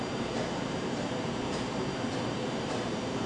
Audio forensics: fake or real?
fake